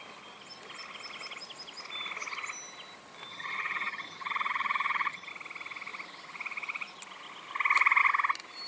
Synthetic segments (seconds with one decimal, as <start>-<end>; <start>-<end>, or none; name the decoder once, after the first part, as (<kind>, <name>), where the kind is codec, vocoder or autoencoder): 3.3-5.3 (vocoder, HiFi-GAN)